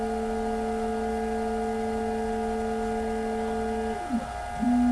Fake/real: real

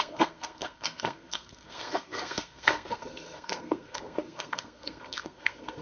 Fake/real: fake